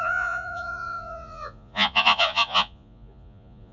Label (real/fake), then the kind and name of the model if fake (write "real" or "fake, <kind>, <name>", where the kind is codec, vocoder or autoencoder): fake, vocoder, Vocos